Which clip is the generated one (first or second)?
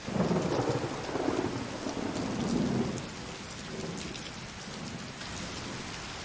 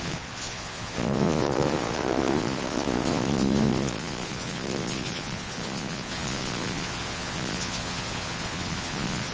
second